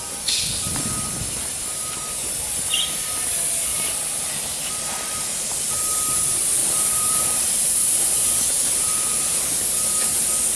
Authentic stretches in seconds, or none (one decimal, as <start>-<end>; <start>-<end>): 0.0-3.7; 4.7-5.3; 5.8-6.6; 9.4-10.6

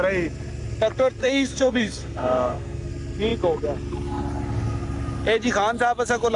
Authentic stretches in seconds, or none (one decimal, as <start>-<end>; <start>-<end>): 0.0-1.2; 2.9-6.4

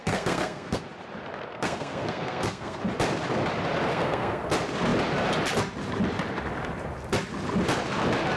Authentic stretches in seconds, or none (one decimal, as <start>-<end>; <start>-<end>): 0.8-1.5; 2.8-3.9; 4.5-8.4

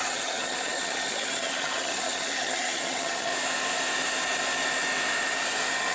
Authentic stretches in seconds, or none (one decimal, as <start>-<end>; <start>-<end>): 3.3-5.9